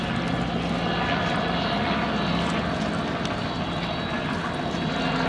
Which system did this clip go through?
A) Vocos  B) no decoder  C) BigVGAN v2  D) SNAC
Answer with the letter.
B